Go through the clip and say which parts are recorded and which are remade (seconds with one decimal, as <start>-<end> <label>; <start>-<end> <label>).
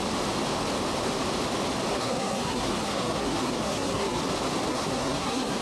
0.0-1.9 recorded; 1.9-4.2 remade; 4.2-4.7 recorded; 4.7-5.6 remade